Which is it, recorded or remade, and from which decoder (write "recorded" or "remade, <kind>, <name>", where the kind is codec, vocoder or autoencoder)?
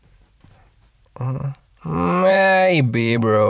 remade, vocoder, BigVGAN v2